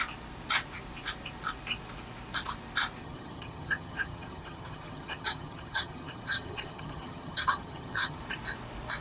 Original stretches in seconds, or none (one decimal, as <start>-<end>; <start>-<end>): 0.0-3.0; 8.2-9.0